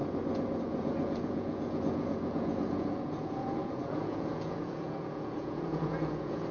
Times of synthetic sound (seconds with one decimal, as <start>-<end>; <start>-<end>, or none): 0.0-6.5